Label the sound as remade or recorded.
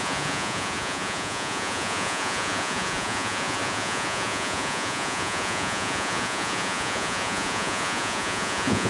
remade